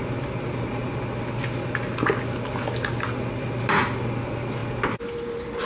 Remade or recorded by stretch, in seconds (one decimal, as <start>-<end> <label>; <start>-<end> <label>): 0.0-5.7 recorded